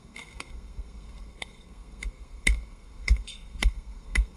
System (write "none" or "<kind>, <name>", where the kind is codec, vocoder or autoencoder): codec, SNAC